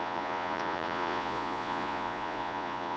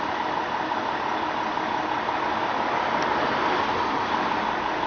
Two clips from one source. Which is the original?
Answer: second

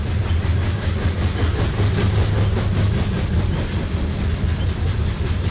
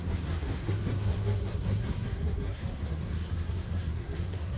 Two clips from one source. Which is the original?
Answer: first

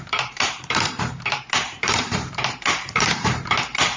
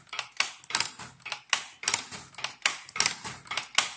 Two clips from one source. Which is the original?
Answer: second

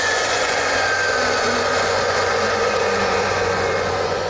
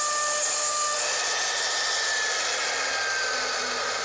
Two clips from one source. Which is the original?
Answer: second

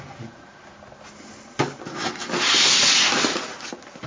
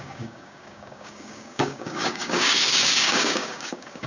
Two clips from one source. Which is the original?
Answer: first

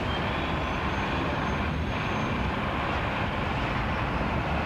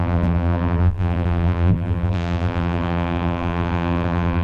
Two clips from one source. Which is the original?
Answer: first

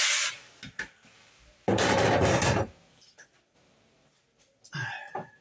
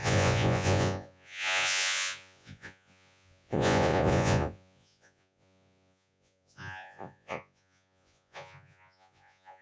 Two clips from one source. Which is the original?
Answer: first